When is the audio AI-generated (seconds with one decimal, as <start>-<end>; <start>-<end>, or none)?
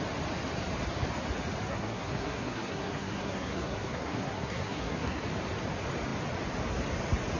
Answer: 1.7-5.2